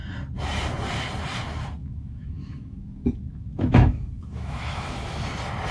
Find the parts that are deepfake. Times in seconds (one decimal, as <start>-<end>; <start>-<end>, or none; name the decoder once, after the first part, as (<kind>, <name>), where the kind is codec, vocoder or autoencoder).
1.8-5.2 (autoencoder, DAC-VAE)